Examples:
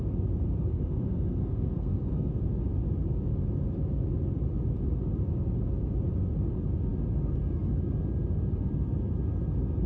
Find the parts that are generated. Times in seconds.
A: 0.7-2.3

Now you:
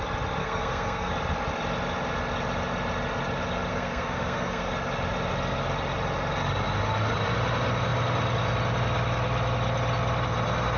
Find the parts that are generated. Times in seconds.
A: 0.4-1.1; 3.7-4.7

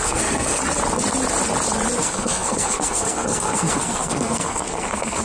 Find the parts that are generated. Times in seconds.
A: 0.0-0.6; 2.0-5.2

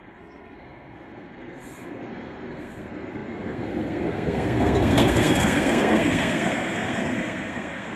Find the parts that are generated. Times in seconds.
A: 0.0-8.0

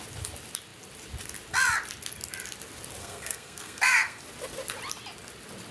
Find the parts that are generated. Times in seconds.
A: 3.0-4.2

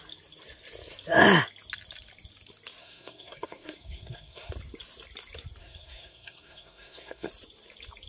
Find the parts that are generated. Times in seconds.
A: 2.8-4.5; 5.6-7.3